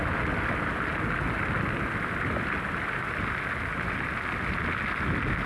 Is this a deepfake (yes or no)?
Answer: no